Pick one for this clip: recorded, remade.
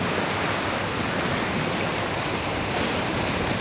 recorded